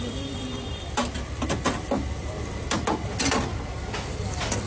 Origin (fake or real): real